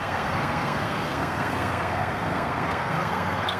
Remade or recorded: remade